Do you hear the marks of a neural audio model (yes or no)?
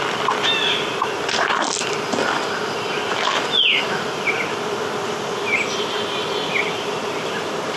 yes